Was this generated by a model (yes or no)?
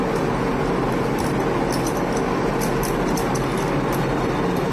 no